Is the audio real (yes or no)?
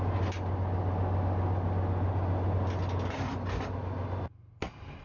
yes